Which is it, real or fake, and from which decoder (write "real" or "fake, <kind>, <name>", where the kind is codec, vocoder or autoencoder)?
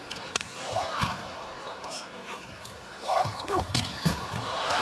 fake, codec, SNAC